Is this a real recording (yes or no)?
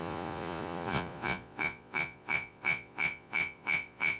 no